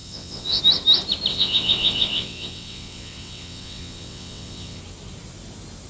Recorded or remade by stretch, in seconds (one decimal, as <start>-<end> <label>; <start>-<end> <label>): 0.0-0.6 remade; 0.6-1.3 recorded; 1.3-4.8 remade; 4.8-5.9 recorded